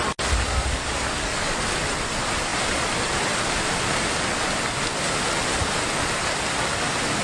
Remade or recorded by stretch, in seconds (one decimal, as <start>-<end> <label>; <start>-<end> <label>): 0.0-0.8 recorded; 0.8-1.6 remade; 1.6-7.2 recorded